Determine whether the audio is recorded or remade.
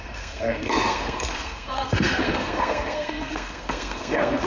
remade